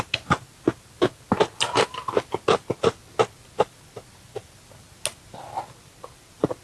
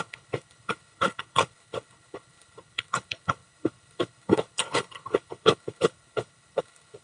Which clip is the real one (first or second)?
first